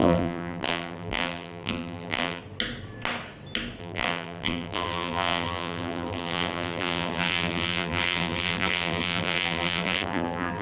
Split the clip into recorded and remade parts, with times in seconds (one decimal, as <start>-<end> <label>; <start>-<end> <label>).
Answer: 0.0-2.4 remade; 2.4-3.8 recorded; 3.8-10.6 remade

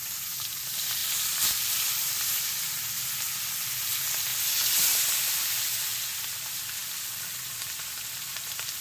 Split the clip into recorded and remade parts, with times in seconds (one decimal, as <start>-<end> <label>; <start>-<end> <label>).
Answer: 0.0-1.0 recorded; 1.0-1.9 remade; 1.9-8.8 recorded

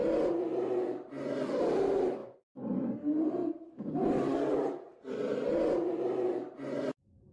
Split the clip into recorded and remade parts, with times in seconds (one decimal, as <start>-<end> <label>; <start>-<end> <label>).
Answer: 0.0-2.2 recorded; 2.2-3.5 remade; 3.5-4.9 recorded; 4.9-6.3 remade; 6.3-7.3 recorded

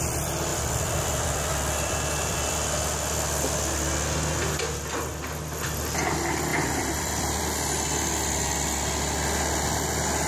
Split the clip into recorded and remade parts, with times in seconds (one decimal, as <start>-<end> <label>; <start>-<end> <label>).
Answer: 0.0-0.5 recorded; 0.5-2.5 remade; 2.5-6.5 recorded; 6.5-7.4 remade; 7.4-10.3 recorded

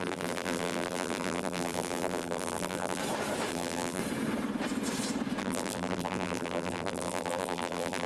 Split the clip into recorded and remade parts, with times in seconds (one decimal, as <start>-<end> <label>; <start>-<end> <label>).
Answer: 0.0-3.0 remade; 3.0-3.5 recorded; 3.5-4.0 remade; 4.0-5.4 recorded; 5.4-8.1 remade

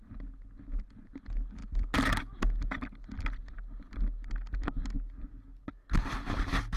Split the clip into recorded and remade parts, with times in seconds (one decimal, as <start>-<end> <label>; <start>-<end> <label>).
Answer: 0.0-6.8 recorded